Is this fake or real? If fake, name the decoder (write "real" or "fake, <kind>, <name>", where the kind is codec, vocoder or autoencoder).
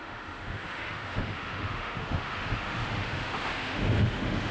fake, autoencoder, DAC-VAE